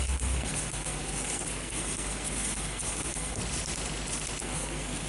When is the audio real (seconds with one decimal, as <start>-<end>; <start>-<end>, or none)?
3.4-4.4